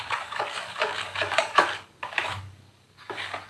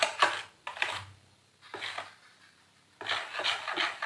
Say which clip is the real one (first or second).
second